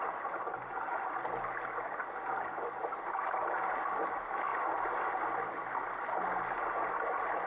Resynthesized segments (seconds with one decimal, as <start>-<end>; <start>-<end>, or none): none